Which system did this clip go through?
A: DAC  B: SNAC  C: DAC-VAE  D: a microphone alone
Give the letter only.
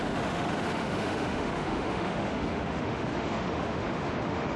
C